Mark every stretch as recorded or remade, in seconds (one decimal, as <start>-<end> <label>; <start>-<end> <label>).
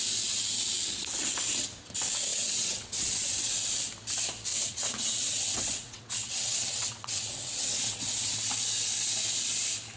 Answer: 0.0-2.3 recorded; 2.3-3.5 remade; 3.5-4.5 recorded; 4.5-8.3 remade; 8.3-10.0 recorded